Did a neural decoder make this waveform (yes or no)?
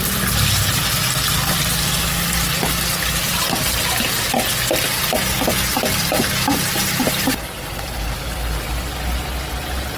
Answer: no